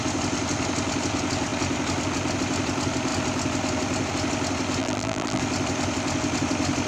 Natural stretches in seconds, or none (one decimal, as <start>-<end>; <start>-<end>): 0.0-4.8; 5.4-6.9